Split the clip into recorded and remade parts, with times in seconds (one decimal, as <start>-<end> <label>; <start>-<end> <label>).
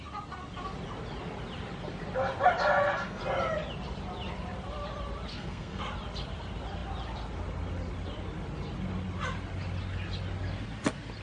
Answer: 0.0-2.7 recorded; 2.7-3.2 remade; 3.2-5.3 recorded; 5.3-5.8 remade; 5.8-11.2 recorded